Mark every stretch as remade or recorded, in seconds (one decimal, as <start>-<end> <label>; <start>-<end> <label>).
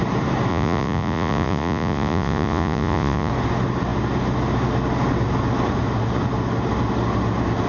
0.0-0.5 recorded; 0.5-3.3 remade; 3.3-7.7 recorded